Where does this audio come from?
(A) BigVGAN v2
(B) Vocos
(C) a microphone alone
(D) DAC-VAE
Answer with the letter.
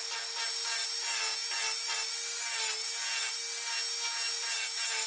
C